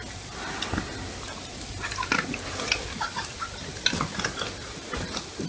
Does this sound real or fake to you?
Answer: real